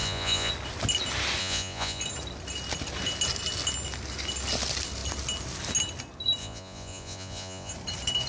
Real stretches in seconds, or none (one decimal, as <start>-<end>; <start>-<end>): 0.5-1.4; 2.0-6.4; 7.7-8.3